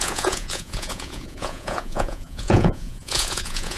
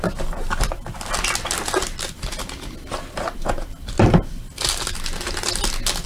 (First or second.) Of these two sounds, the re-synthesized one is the first